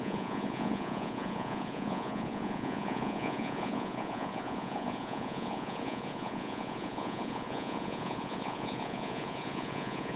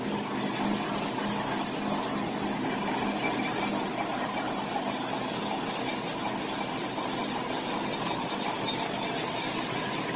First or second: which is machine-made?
first